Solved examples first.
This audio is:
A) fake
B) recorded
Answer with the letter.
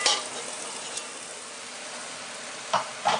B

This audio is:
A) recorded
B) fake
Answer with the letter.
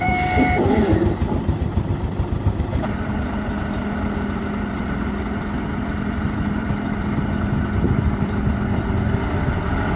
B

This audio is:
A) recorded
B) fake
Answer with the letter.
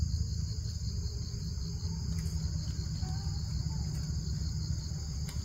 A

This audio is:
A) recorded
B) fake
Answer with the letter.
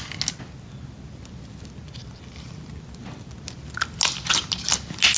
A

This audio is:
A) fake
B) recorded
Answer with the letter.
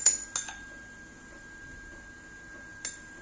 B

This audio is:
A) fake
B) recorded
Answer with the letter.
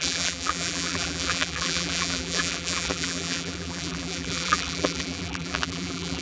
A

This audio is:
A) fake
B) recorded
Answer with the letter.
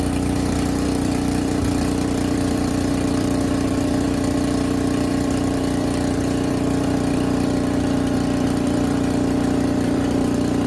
A